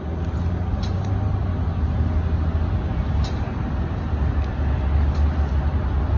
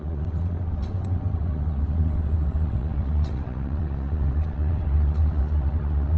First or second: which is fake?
second